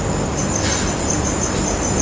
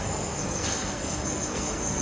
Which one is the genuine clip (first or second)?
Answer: first